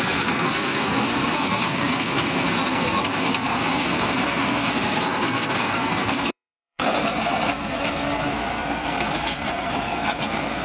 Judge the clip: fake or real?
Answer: fake